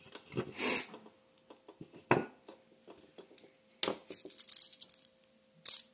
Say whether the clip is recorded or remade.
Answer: recorded